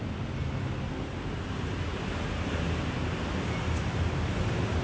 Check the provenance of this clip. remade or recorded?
recorded